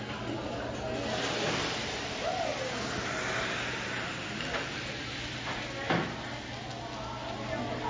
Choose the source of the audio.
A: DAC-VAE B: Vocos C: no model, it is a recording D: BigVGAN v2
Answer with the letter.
C